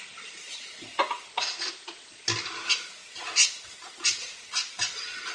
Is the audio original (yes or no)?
yes